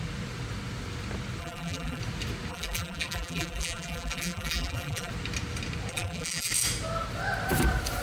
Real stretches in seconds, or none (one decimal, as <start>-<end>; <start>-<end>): 0.0-1.4; 2.0-2.5; 5.1-5.9; 6.5-8.0